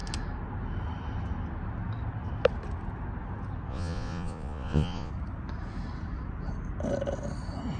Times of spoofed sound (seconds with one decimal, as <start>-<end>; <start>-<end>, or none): 3.7-5.1